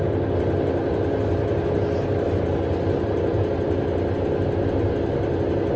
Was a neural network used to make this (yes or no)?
no